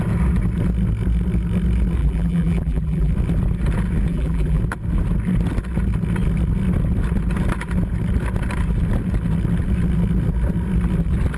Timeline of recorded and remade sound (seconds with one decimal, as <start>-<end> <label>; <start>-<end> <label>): 0.0-2.0 recorded; 2.0-3.1 remade; 3.1-4.1 recorded; 4.1-4.6 remade; 4.6-11.4 recorded